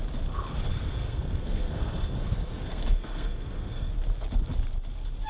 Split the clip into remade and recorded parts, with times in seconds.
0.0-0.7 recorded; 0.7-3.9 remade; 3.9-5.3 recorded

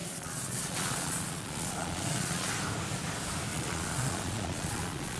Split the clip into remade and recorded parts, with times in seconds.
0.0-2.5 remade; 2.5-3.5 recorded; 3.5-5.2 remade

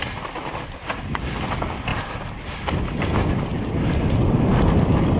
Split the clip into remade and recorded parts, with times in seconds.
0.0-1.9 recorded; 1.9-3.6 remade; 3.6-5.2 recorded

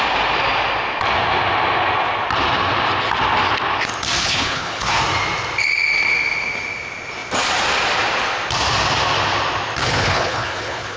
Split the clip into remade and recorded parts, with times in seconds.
0.0-4.2 recorded; 4.2-5.0 remade; 5.0-9.8 recorded; 9.8-11.0 remade